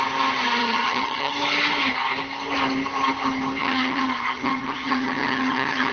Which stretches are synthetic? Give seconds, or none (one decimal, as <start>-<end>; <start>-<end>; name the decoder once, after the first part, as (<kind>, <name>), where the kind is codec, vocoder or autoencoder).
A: 0.6-1.3 (vocoder, HiFi-GAN); 3.6-5.9